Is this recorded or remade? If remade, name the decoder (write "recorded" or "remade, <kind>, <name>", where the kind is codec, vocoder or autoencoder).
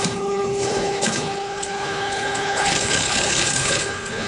remade, codec, HILCodec